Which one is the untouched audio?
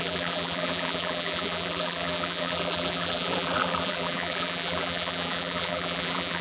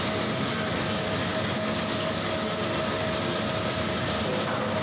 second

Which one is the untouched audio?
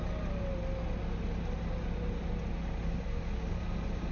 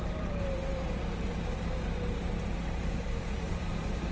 first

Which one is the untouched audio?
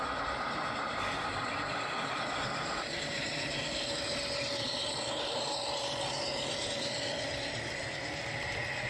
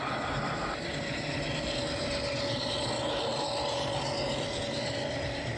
second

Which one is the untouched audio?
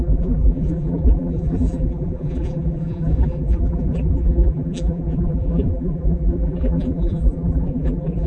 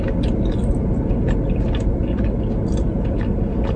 second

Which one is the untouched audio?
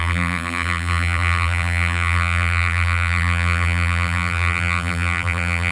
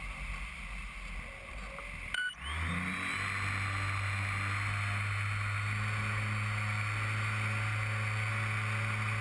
second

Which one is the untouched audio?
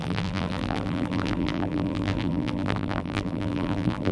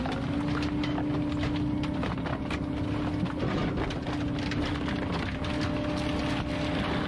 second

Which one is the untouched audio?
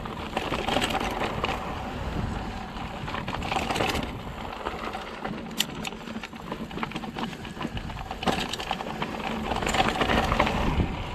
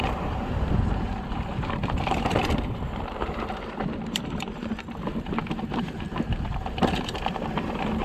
first